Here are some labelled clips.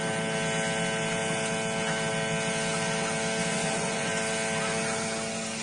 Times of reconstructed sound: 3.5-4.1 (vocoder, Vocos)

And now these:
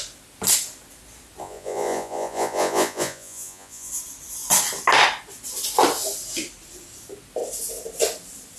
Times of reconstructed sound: 1.4-3.9 (vocoder, Vocos)

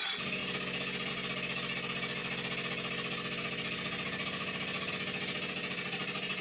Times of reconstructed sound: none